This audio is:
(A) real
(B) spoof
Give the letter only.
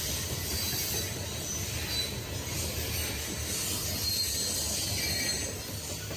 A